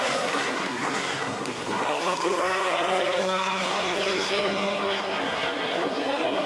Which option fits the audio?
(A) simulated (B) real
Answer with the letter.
A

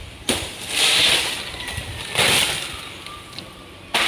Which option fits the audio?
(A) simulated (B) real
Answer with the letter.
B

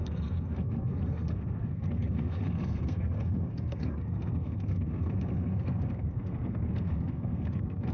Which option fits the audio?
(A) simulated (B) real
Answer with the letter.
A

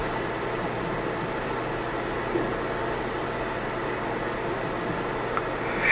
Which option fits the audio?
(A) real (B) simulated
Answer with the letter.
A